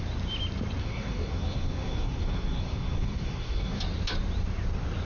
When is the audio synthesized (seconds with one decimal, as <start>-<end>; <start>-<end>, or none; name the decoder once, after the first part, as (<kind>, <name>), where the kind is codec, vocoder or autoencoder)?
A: 0.8-3.8 (codec, SNAC)